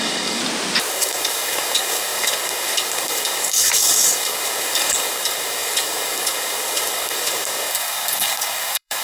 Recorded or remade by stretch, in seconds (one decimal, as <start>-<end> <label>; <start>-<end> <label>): 0.0-0.4 remade; 0.4-0.9 recorded; 0.9-9.0 remade